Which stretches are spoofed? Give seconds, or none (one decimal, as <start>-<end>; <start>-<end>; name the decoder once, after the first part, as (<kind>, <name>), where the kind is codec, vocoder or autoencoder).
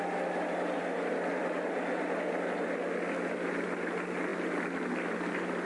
none